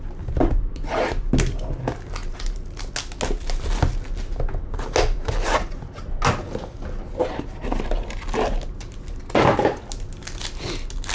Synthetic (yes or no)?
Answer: no